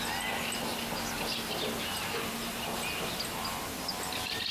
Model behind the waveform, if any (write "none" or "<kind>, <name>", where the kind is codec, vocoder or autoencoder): none